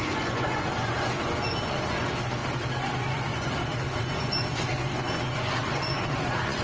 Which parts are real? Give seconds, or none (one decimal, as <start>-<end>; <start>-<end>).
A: 2.4-3.0